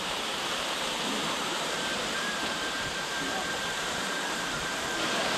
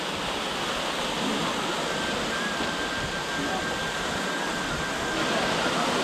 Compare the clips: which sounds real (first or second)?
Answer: second